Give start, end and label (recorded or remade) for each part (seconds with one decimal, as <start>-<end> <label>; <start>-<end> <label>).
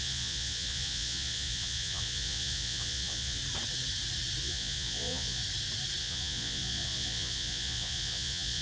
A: 0.0-3.4 remade; 3.4-4.4 recorded; 4.4-5.4 remade; 5.4-6.0 recorded; 6.0-8.6 remade